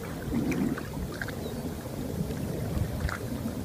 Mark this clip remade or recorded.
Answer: recorded